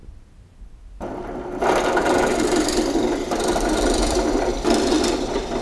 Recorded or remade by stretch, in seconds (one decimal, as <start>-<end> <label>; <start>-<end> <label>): 0.0-2.0 recorded; 2.0-5.6 remade